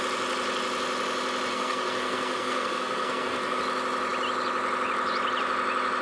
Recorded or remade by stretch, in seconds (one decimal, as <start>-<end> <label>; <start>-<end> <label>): 0.0-1.5 recorded; 1.5-3.6 remade; 3.6-6.0 recorded